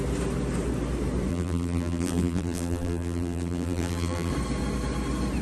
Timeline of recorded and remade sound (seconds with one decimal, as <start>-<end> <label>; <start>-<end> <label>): 0.0-1.3 recorded; 1.3-4.3 remade; 4.3-5.4 recorded